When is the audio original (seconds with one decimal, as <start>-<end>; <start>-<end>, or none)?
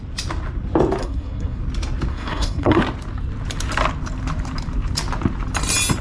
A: 0.0-1.0; 1.6-2.1; 2.8-6.0